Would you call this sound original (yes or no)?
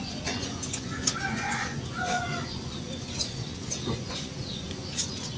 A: no